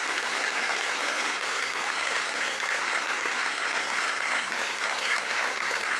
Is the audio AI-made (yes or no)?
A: yes